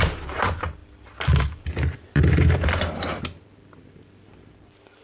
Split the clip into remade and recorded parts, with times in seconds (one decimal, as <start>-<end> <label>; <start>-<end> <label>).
0.0-5.0 remade